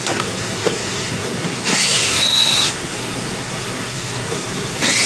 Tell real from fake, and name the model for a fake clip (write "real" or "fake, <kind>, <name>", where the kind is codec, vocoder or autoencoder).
fake, codec, SNAC